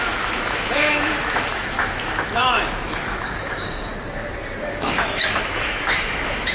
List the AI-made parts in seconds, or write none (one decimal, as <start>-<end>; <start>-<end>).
0.0-3.9; 4.6-6.5